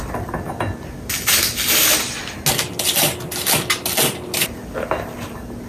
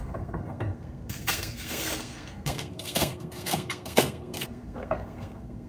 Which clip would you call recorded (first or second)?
first